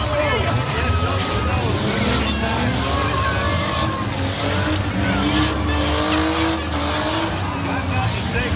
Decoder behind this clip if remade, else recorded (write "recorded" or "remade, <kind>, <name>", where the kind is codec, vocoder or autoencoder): recorded